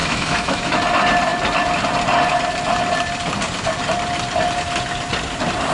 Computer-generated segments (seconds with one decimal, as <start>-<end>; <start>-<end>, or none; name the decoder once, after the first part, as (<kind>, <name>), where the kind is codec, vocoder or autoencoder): 0.0-0.8 (autoencoder, DAC-VAE)